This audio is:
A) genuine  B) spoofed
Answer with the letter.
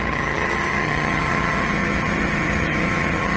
B